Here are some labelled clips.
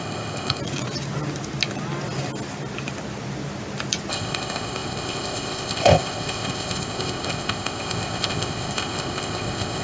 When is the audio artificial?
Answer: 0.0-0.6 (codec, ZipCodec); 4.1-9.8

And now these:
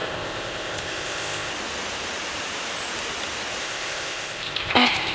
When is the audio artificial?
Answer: 0.0-1.5 (codec, ZipCodec); 3.6-5.1

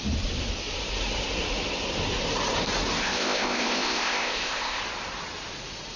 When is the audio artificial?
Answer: 3.0-4.8 (codec, ZipCodec)